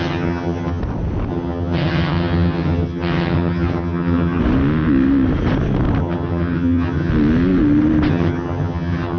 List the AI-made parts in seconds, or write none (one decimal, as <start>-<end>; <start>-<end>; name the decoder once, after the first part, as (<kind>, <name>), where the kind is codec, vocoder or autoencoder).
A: 0.0-0.8 (vocoder, HiFi-GAN); 1.3-4.4; 6.0-7.1; 8.1-9.2